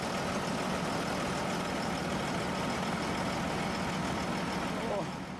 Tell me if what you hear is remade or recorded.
recorded